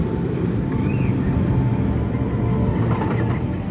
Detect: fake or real real